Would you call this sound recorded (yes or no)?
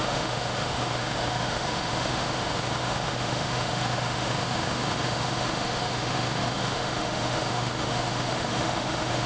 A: no